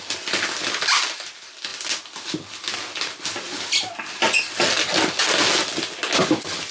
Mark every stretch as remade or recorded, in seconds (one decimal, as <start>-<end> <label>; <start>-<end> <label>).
0.0-6.7 recorded

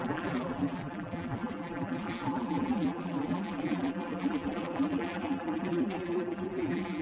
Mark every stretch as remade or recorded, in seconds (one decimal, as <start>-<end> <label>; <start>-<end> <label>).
0.0-7.0 remade

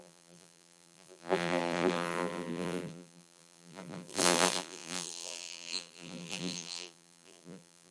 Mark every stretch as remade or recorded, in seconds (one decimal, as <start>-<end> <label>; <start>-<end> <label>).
0.0-7.9 remade

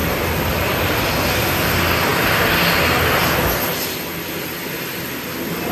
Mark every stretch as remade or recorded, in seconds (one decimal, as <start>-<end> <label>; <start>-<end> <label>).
0.0-1.7 remade; 1.7-5.7 recorded

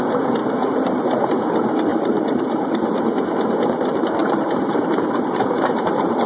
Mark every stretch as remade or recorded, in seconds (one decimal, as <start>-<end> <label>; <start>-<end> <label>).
0.0-0.4 recorded; 0.4-1.2 remade; 1.2-1.9 recorded; 1.9-3.0 remade; 3.0-4.2 recorded; 4.2-6.3 remade

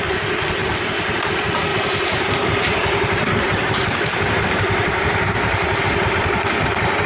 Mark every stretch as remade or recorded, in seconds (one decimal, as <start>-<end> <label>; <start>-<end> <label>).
0.0-0.6 recorded; 0.6-1.2 remade; 1.2-1.7 recorded; 1.7-5.8 remade; 5.8-7.1 recorded